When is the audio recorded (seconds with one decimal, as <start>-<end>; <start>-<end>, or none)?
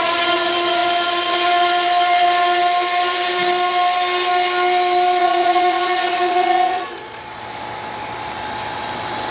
0.0-5.2; 7.4-9.3